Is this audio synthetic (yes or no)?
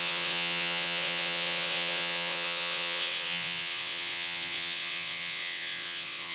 yes